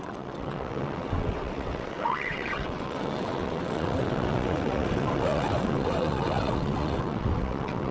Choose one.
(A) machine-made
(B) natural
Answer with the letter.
A